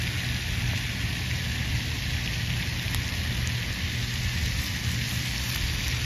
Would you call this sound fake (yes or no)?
no